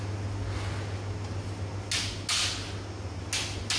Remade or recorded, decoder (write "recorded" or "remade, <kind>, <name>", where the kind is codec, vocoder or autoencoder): recorded